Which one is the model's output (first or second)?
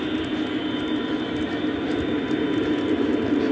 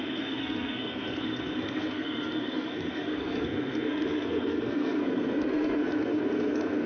second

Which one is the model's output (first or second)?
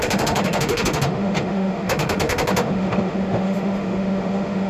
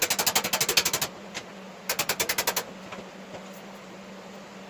first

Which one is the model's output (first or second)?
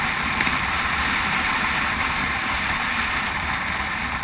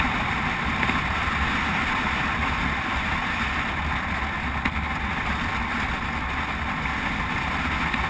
first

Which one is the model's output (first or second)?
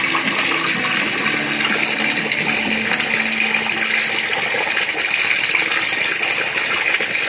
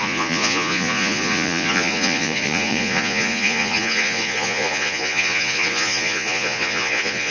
second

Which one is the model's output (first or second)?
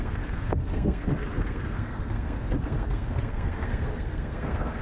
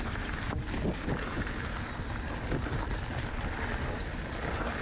first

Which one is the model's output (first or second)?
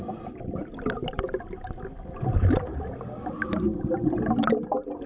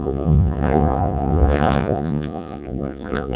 second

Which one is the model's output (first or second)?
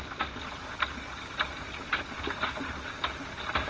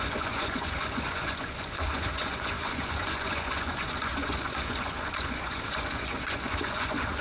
second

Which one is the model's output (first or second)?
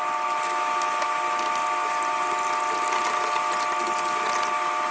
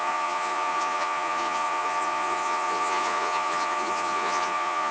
second